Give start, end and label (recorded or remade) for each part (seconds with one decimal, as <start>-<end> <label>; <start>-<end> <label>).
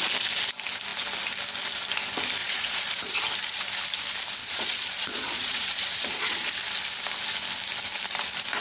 0.0-2.4 recorded; 2.4-3.1 remade; 3.1-4.4 recorded; 4.4-6.5 remade; 6.5-8.6 recorded